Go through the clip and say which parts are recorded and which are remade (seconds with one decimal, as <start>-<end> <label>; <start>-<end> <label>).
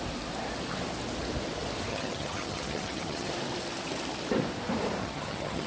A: 0.0-1.9 recorded; 1.9-3.3 remade; 3.3-5.0 recorded; 5.0-5.7 remade